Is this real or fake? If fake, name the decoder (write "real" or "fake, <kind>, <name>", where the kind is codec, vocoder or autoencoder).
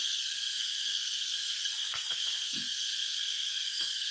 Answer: fake, codec, SNAC